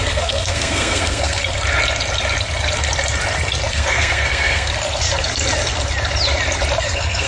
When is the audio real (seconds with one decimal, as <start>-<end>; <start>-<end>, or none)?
1.4-3.7; 4.7-6.8